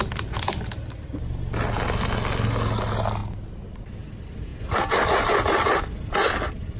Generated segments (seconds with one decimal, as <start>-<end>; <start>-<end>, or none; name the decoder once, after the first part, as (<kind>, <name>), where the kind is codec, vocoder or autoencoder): none